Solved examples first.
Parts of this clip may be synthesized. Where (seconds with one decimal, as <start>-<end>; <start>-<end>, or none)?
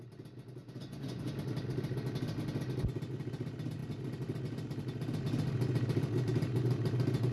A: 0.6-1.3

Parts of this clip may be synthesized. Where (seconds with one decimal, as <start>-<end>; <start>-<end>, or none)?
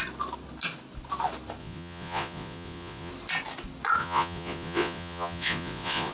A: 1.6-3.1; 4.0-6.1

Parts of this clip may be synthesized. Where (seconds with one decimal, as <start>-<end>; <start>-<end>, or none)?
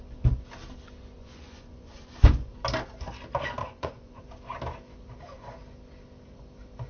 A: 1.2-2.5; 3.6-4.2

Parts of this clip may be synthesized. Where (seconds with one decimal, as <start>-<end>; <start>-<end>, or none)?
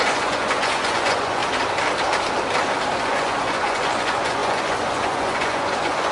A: 0.0-1.4; 3.0-6.1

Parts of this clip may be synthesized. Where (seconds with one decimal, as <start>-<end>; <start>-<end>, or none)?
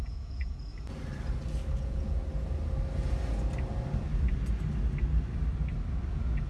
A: 0.0-0.7; 1.7-2.2; 6.1-6.5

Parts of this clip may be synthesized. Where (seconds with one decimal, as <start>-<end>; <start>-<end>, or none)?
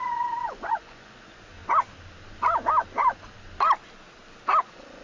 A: 0.0-1.6; 4.6-5.0